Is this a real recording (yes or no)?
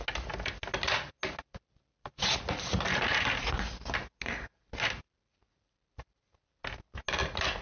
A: yes